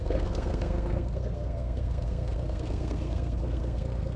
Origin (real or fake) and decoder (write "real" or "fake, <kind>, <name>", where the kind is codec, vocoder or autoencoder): fake, codec, SNAC